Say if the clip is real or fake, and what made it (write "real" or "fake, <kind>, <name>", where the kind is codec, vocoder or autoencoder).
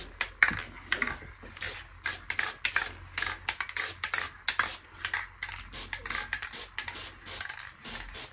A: real